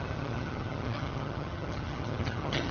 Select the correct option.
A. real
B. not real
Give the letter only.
B